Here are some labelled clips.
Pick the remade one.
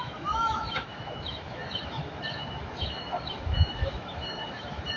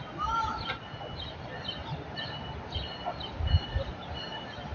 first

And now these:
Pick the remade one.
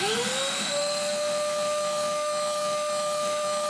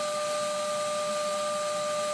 first